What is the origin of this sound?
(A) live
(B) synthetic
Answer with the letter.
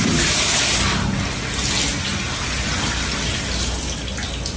A